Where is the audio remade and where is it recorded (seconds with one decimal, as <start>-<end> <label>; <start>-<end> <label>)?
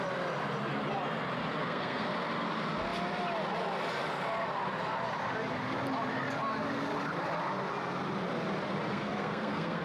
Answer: 0.0-1.6 recorded; 1.6-2.1 remade; 2.1-8.9 recorded; 8.9-9.8 remade